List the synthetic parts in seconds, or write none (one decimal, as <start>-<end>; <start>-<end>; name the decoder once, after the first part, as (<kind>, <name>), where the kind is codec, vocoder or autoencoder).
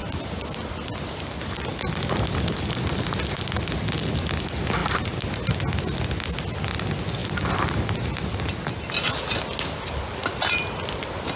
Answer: none